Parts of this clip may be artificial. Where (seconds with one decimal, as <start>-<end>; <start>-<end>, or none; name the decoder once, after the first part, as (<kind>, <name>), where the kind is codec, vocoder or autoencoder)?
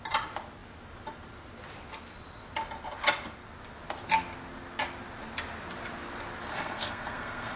6.5-7.6 (codec, SNAC)